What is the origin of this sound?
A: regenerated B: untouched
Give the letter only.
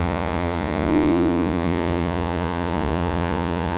A